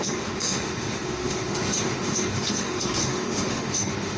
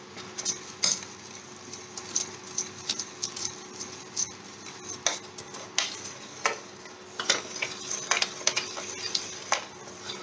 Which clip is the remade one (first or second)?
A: first